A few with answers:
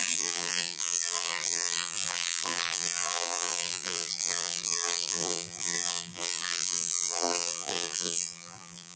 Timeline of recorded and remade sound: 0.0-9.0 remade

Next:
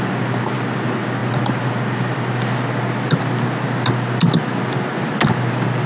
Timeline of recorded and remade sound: 0.0-5.9 recorded

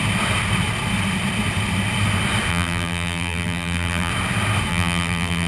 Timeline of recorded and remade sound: 0.0-2.5 recorded; 2.5-4.1 remade; 4.1-4.7 recorded; 4.7-5.5 remade